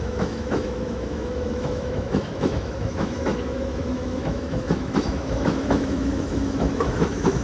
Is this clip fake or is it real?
fake